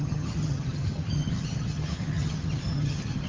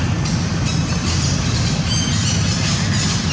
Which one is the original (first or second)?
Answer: second